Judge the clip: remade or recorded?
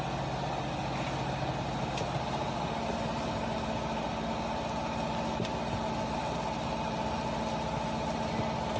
recorded